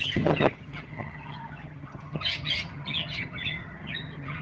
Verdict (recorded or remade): remade